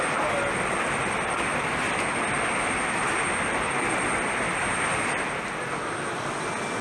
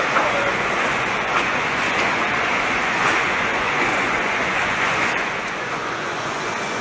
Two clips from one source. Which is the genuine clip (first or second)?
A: first